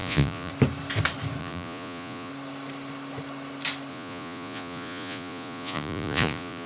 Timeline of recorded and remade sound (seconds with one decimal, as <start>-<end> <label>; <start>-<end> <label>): 0.0-0.5 remade; 0.5-1.4 recorded; 1.4-2.3 remade; 2.3-3.9 recorded; 3.9-6.7 remade